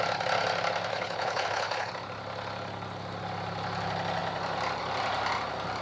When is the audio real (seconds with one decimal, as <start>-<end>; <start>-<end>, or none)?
0.0-0.9; 1.9-5.8

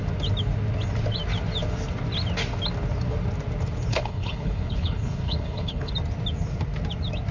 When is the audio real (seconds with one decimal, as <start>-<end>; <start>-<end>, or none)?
0.0-3.9; 5.9-7.3

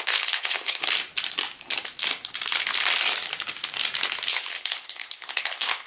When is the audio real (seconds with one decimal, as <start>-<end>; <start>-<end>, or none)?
0.8-4.3